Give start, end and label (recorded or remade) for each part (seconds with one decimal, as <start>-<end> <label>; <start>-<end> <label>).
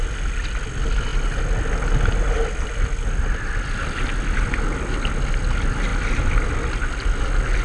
0.0-7.6 recorded